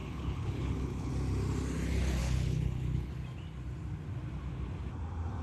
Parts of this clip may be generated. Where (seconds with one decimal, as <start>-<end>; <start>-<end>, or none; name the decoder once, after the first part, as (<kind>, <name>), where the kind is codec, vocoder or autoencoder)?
0.0-1.1 (codec, HILCodec); 2.2-3.1